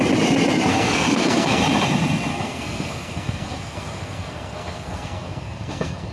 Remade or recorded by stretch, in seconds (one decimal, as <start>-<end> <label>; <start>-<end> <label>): 0.0-0.7 recorded; 0.7-1.6 remade; 1.6-2.3 recorded; 2.3-6.1 remade